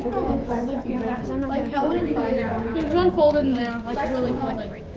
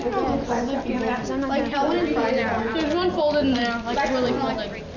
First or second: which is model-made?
first